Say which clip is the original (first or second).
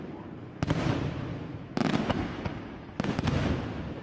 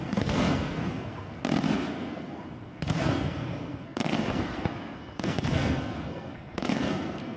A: first